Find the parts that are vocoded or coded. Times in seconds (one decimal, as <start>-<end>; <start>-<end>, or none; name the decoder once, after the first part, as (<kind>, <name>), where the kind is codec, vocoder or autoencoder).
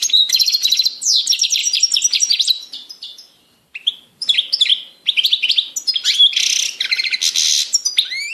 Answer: 0.0-4.7 (vocoder, BigVGAN v2)